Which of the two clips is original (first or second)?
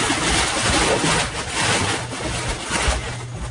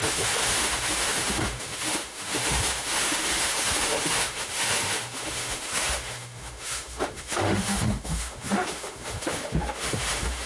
first